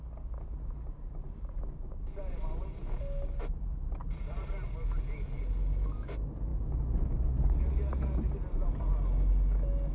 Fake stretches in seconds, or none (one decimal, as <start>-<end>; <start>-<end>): none